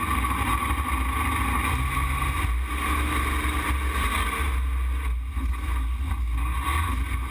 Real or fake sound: real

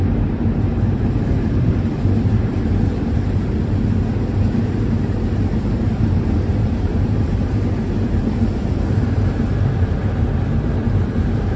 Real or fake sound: fake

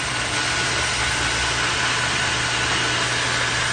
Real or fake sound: real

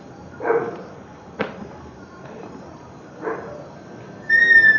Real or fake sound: fake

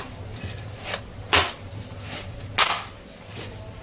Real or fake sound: real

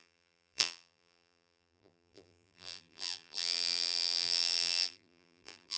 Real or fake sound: fake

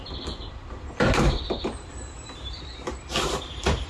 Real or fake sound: fake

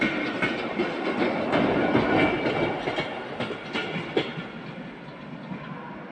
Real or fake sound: real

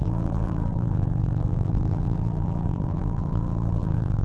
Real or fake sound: fake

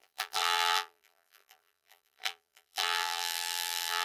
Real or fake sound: fake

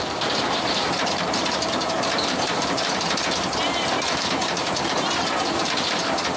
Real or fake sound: fake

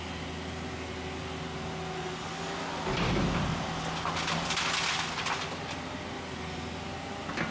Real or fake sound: real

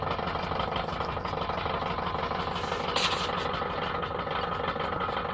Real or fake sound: real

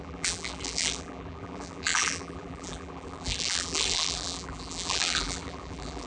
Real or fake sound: fake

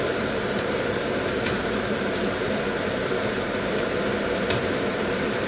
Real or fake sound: fake